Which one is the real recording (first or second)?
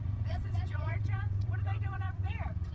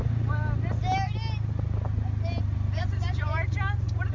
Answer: second